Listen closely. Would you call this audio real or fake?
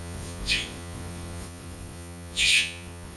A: fake